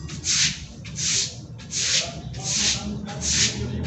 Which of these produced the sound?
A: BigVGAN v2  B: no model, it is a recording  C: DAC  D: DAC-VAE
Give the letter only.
B